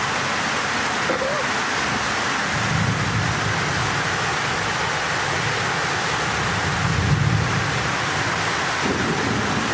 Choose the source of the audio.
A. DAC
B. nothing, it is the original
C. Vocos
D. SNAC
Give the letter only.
B